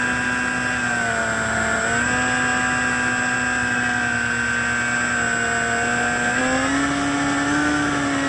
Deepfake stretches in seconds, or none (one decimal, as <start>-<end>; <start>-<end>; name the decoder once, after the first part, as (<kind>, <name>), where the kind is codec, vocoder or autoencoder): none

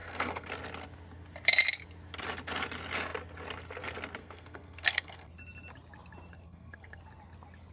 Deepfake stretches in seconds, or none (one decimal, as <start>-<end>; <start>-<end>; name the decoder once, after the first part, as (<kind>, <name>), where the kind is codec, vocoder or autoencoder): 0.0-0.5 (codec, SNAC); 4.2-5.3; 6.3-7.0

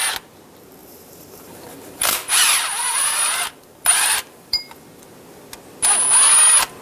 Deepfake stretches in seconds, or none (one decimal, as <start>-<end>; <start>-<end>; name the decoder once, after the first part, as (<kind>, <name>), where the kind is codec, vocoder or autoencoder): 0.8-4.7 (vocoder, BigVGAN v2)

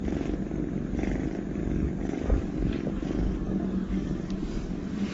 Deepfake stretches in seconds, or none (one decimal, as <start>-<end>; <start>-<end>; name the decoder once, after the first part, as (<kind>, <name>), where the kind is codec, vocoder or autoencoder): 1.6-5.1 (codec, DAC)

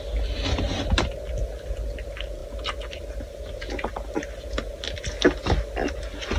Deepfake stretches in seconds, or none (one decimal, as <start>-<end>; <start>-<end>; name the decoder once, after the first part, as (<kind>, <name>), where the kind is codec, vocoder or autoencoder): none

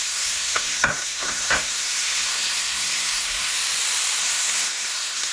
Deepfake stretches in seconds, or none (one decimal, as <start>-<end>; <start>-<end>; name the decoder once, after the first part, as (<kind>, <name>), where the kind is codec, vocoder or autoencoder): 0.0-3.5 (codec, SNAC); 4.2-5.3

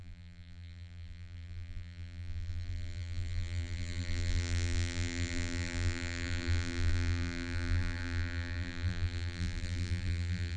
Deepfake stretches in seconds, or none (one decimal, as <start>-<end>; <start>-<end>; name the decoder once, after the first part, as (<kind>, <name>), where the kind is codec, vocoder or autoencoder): 0.0-10.6 (vocoder, BigVGAN v2)